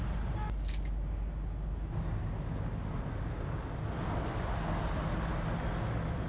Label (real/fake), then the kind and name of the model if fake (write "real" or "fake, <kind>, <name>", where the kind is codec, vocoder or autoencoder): real